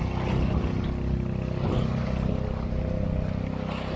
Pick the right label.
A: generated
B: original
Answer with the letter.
B